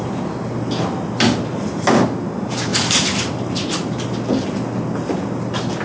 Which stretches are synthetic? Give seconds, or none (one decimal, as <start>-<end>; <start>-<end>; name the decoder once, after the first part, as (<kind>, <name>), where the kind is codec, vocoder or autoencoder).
2.7-3.2 (vocoder, BigVGAN v2)